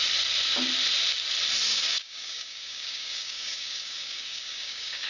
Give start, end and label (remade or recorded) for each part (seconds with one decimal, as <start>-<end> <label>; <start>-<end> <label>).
0.0-1.7 recorded; 1.7-5.1 remade